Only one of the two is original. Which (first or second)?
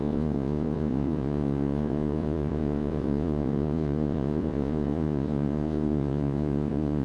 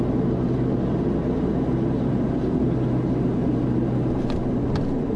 second